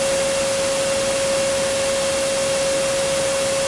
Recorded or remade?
recorded